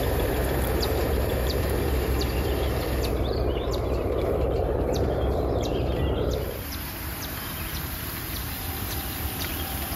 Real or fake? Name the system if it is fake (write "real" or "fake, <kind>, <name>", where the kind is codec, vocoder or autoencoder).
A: fake, vocoder, BigVGAN v2